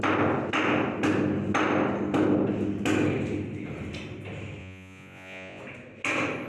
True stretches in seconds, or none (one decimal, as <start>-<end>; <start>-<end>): 0.0-4.6; 5.6-6.5